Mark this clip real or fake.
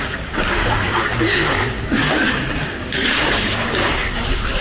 fake